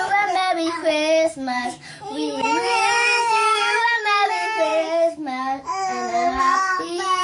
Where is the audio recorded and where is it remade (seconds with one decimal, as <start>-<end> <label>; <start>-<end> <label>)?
0.0-7.2 remade